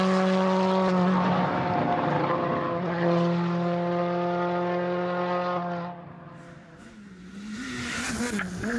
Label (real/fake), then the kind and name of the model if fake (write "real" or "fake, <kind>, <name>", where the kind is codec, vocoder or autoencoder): real